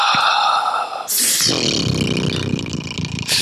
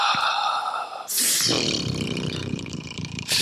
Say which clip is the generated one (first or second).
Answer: second